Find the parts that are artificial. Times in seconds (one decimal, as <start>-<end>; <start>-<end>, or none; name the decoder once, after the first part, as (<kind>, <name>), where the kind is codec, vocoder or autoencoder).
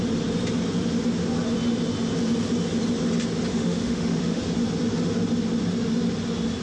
3.5-4.4 (autoencoder, DAC-VAE)